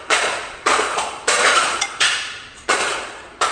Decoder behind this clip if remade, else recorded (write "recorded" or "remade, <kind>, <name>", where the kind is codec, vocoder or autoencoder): remade, vocoder, Vocos